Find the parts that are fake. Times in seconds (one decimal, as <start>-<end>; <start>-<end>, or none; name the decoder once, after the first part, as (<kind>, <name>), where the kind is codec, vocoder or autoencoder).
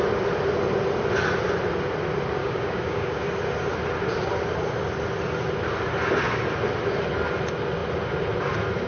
2.4-3.2 (codec, DAC)